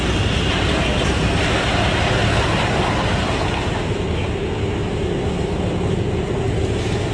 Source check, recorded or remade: recorded